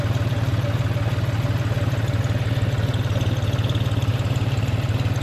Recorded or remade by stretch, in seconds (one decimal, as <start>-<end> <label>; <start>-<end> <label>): 0.0-4.1 recorded; 4.1-4.7 remade; 4.7-5.2 recorded